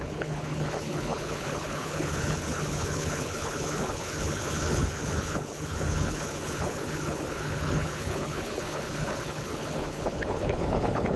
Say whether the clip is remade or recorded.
remade